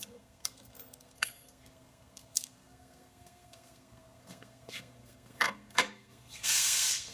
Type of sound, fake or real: fake